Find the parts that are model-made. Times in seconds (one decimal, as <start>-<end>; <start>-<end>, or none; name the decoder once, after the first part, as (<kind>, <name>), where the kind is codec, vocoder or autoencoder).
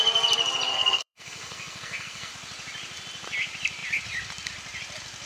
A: 0.7-2.3 (codec, SNAC)